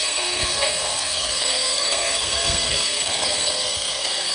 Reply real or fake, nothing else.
fake